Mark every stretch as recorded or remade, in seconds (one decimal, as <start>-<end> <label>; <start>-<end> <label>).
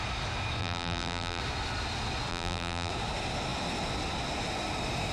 0.0-0.6 recorded; 0.6-1.4 remade; 1.4-2.3 recorded; 2.3-2.9 remade; 2.9-5.1 recorded